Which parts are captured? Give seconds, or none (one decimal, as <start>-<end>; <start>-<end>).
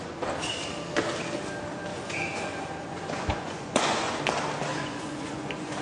0.0-1.9; 4.2-4.7